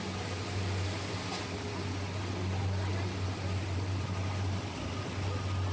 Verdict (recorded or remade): recorded